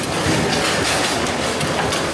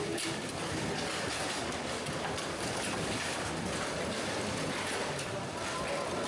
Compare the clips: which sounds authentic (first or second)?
first